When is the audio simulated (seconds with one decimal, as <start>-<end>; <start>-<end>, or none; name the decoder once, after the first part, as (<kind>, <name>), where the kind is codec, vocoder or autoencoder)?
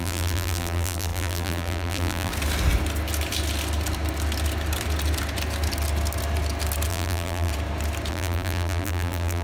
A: 0.0-2.3 (vocoder, BigVGAN v2); 6.9-7.5; 8.1-9.4